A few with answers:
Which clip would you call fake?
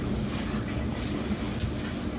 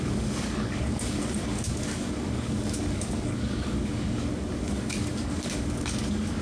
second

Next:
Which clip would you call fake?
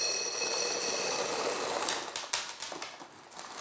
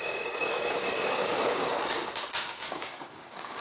second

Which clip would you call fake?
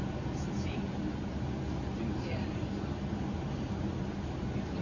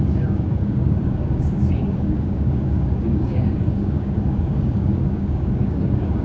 second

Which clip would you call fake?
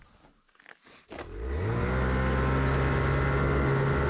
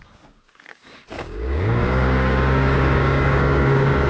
second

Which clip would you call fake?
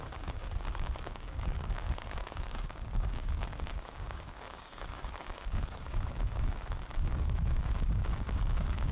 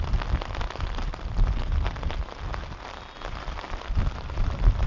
first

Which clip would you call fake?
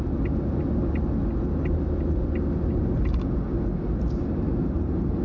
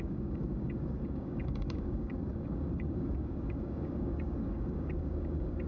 second